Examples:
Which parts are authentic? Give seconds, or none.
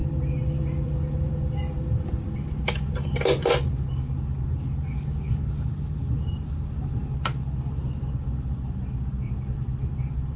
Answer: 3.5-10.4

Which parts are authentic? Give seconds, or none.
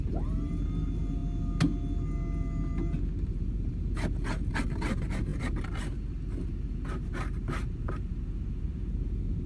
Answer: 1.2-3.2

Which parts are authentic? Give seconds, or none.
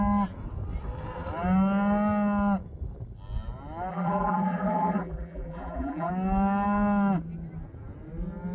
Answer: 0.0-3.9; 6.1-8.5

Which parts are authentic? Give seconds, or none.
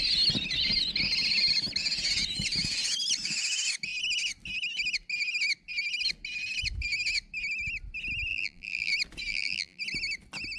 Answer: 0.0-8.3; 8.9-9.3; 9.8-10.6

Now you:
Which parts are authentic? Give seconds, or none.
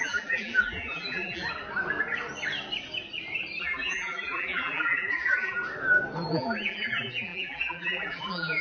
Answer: 1.4-3.6; 5.6-6.3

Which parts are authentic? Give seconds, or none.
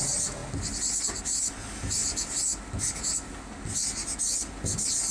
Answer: 0.4-1.6; 2.0-5.1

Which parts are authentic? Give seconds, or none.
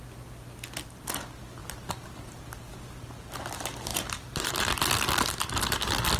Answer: 0.0-1.6; 3.5-3.9; 4.5-6.2